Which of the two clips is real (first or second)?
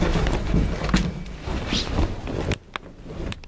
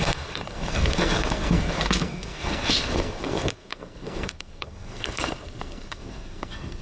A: first